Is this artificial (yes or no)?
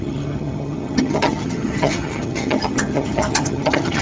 yes